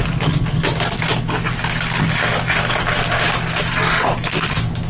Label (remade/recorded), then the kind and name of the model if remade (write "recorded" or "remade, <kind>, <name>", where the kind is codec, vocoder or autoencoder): recorded